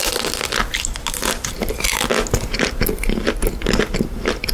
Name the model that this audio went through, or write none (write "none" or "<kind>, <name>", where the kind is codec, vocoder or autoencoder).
none